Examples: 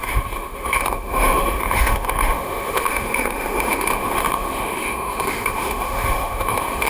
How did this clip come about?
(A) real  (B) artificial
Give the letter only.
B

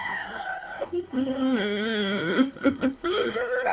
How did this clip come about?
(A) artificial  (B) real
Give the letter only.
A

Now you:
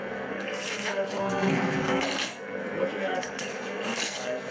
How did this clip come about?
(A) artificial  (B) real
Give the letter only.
A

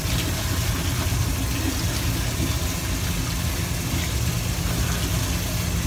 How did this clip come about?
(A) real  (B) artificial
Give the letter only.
A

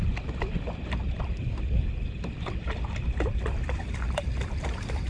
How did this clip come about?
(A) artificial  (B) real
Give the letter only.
A